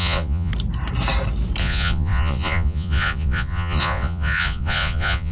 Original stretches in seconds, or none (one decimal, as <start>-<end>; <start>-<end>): 0.5-1.6